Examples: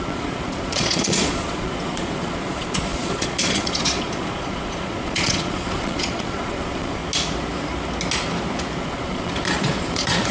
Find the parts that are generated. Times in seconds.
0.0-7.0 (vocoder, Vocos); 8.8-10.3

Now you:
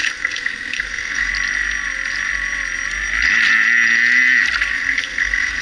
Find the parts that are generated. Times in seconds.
0.0-1.3 (codec, SNAC); 4.7-5.6

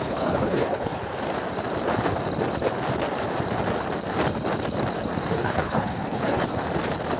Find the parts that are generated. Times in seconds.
0.0-1.0 (codec, HILCodec); 5.3-6.5